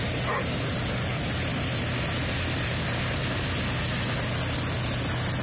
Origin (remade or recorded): recorded